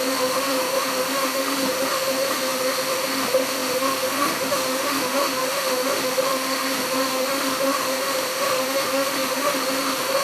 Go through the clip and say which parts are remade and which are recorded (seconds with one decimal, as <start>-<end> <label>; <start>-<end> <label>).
0.0-10.2 remade